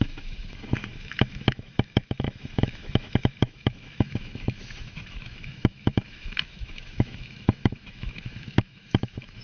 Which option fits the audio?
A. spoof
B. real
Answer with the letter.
A